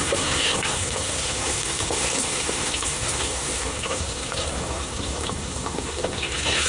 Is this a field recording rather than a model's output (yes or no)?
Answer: no